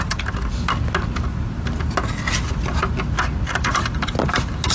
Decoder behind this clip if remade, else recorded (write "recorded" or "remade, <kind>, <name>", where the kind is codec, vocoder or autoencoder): recorded